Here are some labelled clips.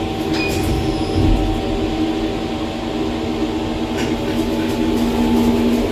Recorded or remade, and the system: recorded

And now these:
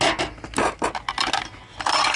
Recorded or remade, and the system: recorded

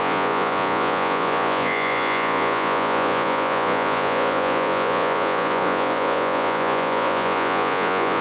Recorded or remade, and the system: remade, vocoder, Vocos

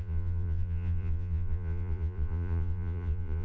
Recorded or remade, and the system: remade, vocoder, Vocos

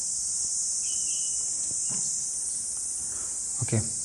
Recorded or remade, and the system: recorded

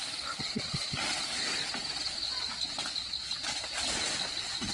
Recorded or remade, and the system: recorded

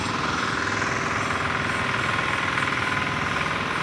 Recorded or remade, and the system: recorded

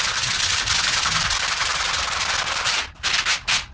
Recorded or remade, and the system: recorded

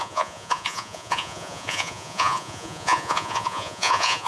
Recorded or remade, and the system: remade, vocoder, Vocos